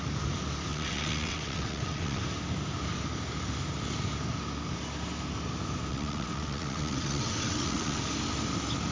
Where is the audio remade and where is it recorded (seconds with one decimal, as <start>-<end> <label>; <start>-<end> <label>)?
0.0-0.7 recorded; 0.7-2.2 remade; 2.2-5.9 recorded; 5.9-8.0 remade; 8.0-8.9 recorded